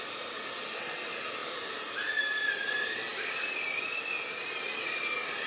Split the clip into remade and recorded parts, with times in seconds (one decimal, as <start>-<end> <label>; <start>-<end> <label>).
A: 0.0-1.4 recorded; 1.4-2.1 remade; 2.1-5.5 recorded